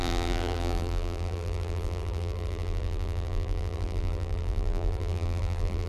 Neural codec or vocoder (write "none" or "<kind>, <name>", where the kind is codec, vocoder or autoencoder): vocoder, BigVGAN v2